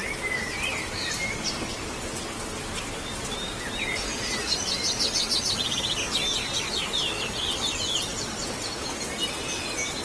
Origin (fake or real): real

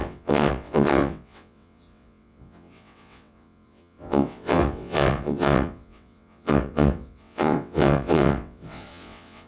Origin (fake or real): fake